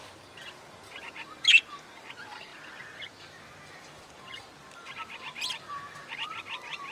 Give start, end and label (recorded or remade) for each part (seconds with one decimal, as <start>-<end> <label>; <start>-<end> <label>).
0.0-0.6 remade; 0.6-2.5 recorded; 2.5-6.9 remade